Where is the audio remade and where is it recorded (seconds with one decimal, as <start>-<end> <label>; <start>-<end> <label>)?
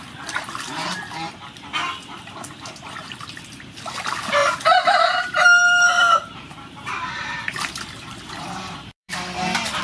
0.0-4.4 recorded; 4.4-9.1 remade; 9.1-9.8 recorded